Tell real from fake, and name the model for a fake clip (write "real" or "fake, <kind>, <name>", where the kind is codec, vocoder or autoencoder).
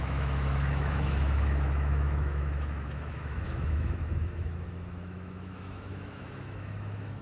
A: fake, autoencoder, DAC-VAE